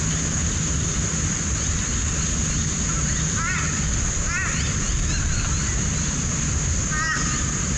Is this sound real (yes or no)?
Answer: yes